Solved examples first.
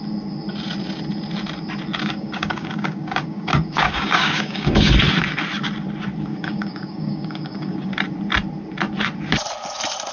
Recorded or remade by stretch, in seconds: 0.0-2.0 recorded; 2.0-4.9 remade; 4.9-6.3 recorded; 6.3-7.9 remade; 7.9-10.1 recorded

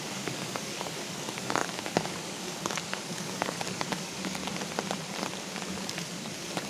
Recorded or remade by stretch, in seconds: 0.0-4.4 remade; 4.4-5.4 recorded; 5.4-6.7 remade

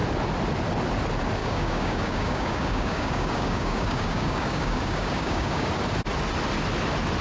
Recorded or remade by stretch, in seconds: 0.0-1.4 recorded; 1.4-5.7 remade; 5.7-7.2 recorded